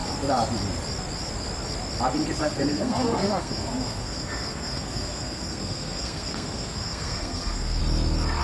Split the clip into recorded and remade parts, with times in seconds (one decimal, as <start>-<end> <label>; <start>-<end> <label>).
0.0-2.4 recorded; 2.4-7.8 remade; 7.8-8.4 recorded